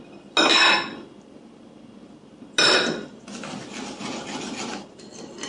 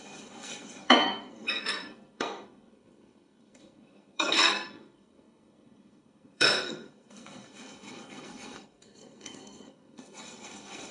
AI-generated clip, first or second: second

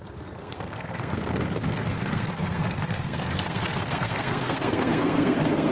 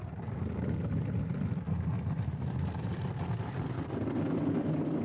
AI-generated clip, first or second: first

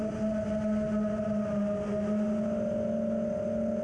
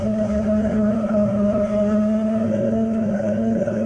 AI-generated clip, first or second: second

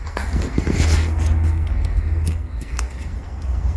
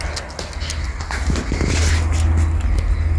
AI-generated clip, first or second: first